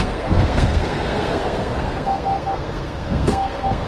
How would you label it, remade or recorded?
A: remade